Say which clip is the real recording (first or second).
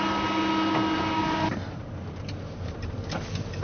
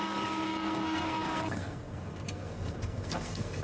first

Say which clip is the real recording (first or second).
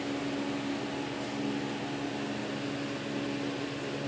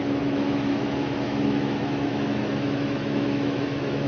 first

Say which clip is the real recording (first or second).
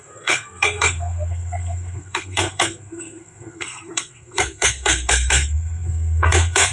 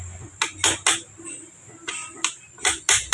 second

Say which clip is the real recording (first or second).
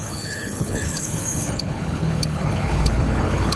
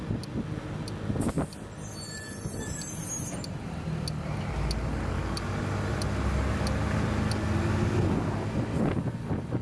second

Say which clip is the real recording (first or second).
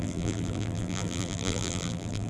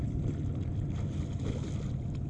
second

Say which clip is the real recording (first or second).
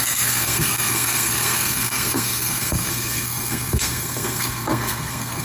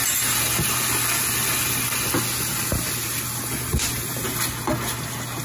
second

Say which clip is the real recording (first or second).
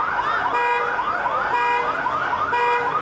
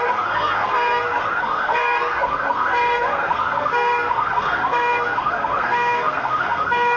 first